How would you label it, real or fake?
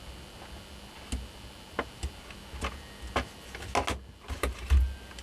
real